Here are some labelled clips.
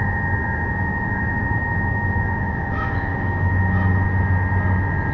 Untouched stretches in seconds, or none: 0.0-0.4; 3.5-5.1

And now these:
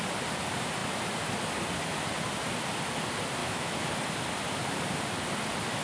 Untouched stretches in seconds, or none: 0.0-3.4; 3.9-5.8

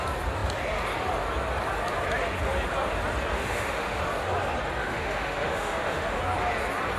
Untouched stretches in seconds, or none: 0.0-3.3; 4.0-4.8; 6.2-7.0

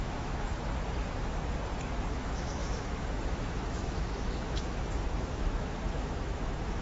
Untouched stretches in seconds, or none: 0.7-2.1